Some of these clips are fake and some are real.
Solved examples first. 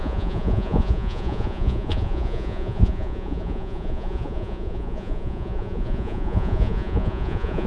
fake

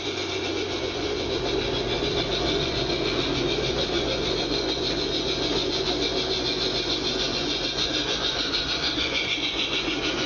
fake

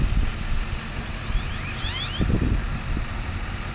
real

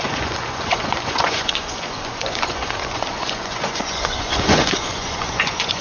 fake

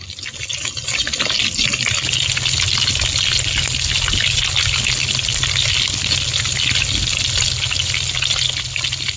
real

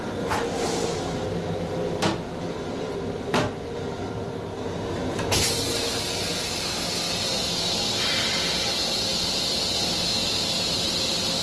real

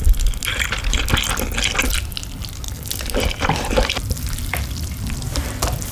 real